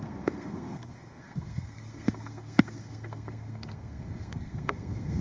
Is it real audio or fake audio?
fake